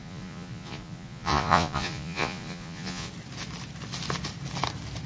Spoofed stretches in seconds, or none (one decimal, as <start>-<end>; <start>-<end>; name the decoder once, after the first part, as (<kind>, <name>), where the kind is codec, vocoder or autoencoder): 0.0-3.1 (vocoder, Vocos)